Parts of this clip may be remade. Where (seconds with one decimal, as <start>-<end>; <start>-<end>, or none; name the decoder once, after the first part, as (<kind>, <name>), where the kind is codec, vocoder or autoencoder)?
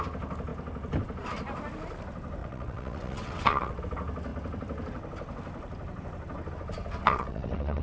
2.4-3.8 (vocoder, WaveNeXt); 7.0-7.8